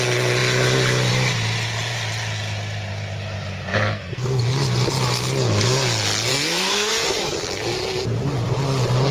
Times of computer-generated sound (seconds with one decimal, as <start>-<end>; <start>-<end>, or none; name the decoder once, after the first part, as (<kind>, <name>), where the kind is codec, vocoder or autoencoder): 3.7-4.4 (codec, SNAC); 6.3-6.9